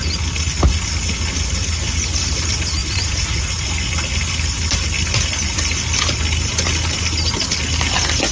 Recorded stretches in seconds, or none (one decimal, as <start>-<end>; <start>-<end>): 0.0-2.8; 3.6-8.3